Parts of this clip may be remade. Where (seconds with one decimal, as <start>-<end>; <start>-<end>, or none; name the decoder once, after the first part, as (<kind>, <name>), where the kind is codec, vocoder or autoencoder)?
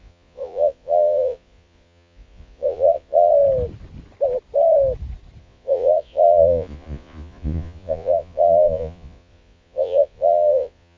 0.0-3.3 (vocoder, Vocos); 5.4-11.0